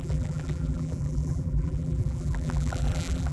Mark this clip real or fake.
fake